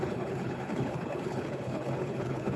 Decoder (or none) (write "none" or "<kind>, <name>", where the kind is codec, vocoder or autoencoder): codec, HILCodec